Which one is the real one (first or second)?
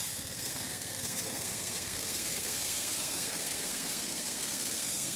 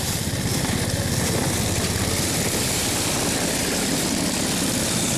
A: second